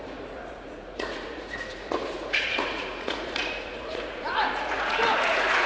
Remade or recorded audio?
remade